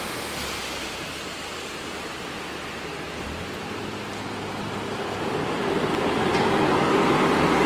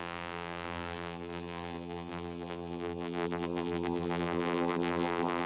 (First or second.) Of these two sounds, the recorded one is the first